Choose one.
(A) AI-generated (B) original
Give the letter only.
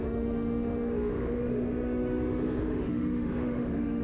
A